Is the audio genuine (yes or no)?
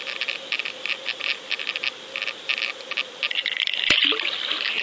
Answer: yes